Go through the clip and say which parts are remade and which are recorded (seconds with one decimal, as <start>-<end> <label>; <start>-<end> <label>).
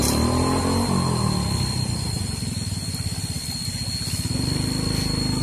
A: 0.0-5.4 recorded